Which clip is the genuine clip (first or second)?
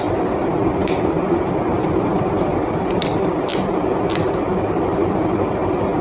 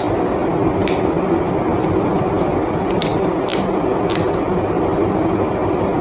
second